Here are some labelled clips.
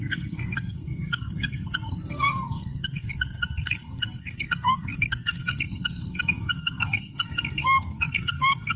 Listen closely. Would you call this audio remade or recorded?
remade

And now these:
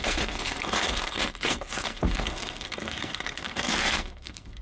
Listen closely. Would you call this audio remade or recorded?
remade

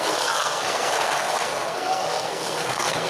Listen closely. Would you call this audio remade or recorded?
remade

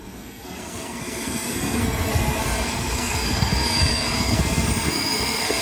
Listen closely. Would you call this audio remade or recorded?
remade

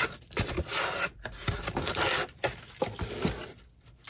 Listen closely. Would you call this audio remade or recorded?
recorded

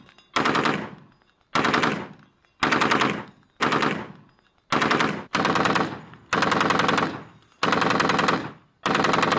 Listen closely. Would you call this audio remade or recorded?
recorded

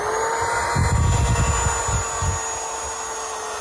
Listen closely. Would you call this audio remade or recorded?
recorded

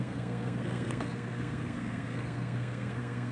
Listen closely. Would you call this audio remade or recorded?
remade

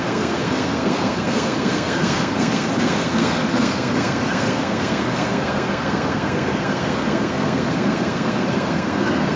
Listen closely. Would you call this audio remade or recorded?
remade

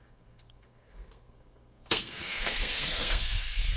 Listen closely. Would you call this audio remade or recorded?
remade